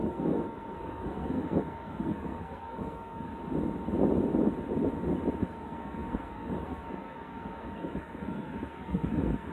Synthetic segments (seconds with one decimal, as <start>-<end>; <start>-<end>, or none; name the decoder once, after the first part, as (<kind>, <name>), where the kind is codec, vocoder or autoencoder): 0.0-3.3 (codec, SNAC); 5.4-9.5